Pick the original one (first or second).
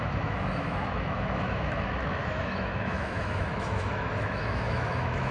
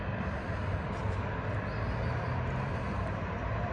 second